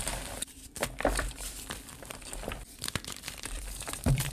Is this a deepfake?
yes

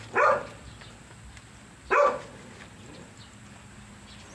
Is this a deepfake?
yes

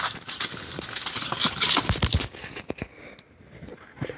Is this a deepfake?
no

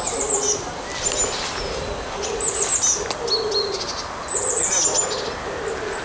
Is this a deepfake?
no